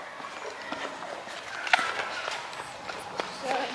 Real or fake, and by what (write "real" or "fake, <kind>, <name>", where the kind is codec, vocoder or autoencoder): real